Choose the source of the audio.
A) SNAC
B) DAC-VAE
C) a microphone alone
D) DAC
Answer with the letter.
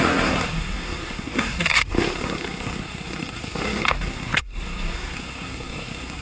A